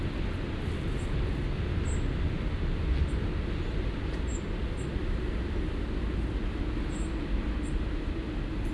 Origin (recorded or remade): recorded